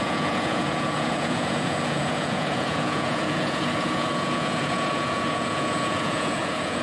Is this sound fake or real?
fake